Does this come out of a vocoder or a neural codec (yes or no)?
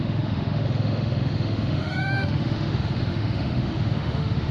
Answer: yes